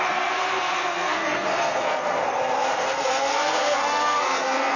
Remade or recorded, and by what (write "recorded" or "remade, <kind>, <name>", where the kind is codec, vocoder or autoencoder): remade, codec, SNAC